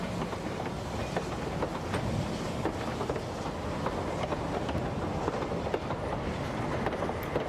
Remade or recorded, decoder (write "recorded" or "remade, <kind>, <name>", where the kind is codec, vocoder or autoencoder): recorded